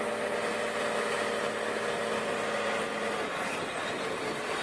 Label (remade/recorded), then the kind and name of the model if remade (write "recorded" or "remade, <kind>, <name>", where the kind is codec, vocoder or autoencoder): recorded